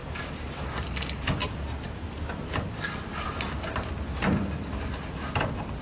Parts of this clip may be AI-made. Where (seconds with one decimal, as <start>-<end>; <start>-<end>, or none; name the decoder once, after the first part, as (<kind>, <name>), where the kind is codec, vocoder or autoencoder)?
0.0-0.7 (vocoder, BigVGAN v2); 1.4-2.1